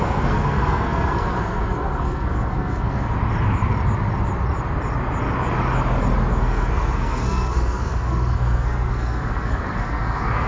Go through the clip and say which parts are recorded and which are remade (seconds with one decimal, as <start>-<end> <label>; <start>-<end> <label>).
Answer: 0.0-3.1 remade; 3.1-6.3 recorded; 6.3-10.5 remade